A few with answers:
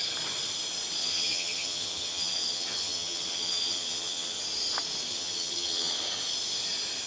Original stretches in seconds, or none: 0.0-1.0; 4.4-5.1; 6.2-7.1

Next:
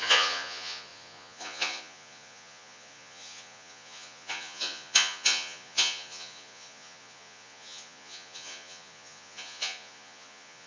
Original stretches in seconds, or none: none

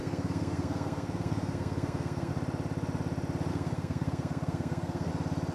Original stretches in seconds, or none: 2.3-3.5; 5.1-5.5

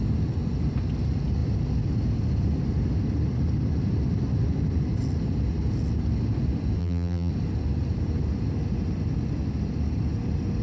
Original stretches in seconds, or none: 0.0-6.8; 7.3-10.6

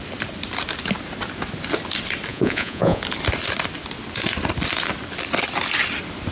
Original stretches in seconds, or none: 0.0-2.3; 3.0-6.3

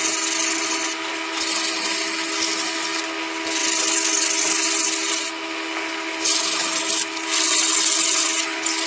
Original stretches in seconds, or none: 0.0-8.9